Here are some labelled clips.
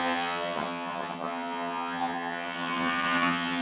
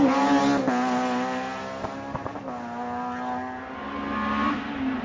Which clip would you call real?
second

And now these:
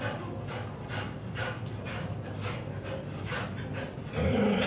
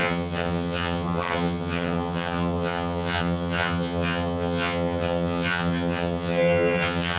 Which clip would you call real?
first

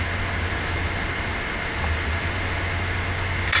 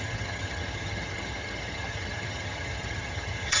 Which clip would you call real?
first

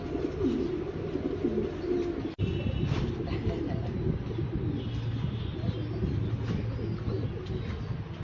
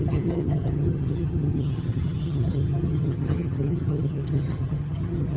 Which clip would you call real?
first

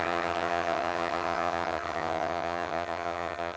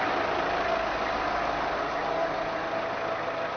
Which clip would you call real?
second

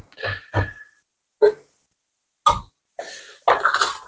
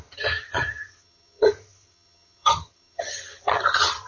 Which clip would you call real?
first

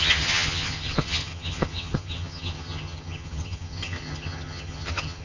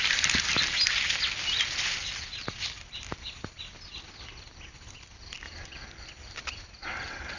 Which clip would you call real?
second